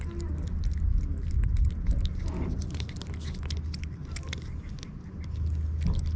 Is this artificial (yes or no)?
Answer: no